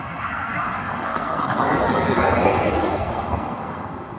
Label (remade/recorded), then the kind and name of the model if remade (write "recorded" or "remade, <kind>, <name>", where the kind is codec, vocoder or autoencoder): remade, codec, SNAC